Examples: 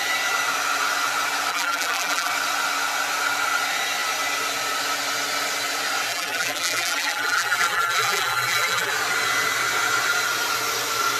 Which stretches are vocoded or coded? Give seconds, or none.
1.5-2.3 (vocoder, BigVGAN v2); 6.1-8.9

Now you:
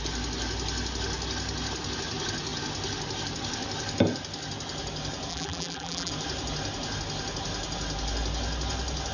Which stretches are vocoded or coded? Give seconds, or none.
5.3-6.1 (vocoder, BigVGAN v2)

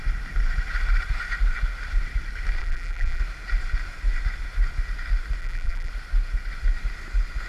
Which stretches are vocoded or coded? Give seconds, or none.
2.6-3.2 (vocoder, BigVGAN v2); 5.4-5.9

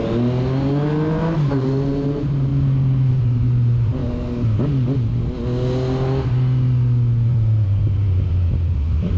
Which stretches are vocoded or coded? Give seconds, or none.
1.2-2.5 (vocoder, BigVGAN v2); 3.1-4.0; 7.3-9.2

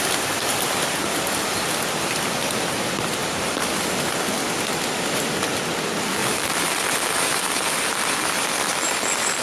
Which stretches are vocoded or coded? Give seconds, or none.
3.2-3.8 (vocoder, BigVGAN v2)